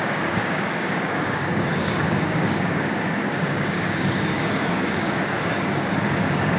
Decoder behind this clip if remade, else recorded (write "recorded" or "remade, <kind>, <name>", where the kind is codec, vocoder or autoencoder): remade, codec, DAC